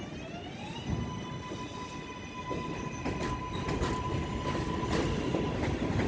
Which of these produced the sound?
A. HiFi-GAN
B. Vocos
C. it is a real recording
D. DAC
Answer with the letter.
C